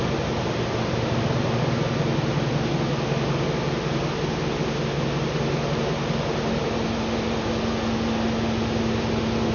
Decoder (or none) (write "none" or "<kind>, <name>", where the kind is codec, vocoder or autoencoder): none